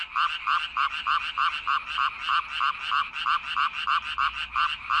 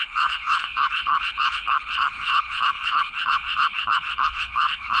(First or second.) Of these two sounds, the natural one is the first